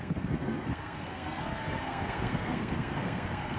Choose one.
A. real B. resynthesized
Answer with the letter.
B